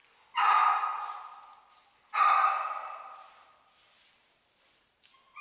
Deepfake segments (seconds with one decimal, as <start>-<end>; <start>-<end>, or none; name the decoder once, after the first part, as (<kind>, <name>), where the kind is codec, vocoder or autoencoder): none